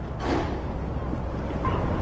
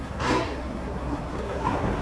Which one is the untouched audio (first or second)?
first